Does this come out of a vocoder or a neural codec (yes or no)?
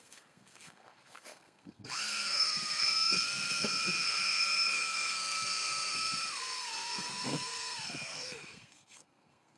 yes